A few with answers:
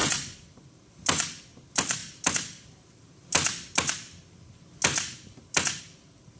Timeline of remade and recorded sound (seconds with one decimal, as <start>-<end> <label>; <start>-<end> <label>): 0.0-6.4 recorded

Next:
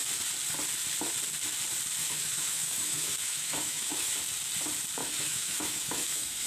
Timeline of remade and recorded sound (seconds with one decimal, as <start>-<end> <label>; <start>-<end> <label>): 0.0-2.0 recorded; 2.0-4.1 remade; 4.1-5.0 recorded; 5.0-6.5 remade

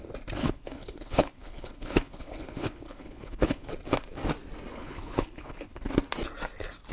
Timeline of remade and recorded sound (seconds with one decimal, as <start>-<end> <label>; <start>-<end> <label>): 0.0-0.4 recorded; 0.4-3.7 remade; 3.7-4.7 recorded; 4.7-5.9 remade; 5.9-6.9 recorded

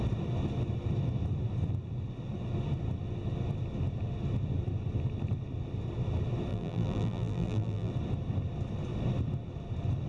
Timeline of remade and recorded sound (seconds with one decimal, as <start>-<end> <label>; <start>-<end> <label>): 0.0-6.5 recorded; 6.5-7.9 remade; 7.9-10.1 recorded

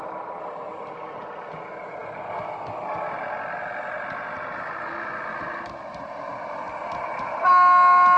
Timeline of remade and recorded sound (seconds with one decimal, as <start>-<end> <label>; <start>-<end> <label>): 0.0-8.2 recorded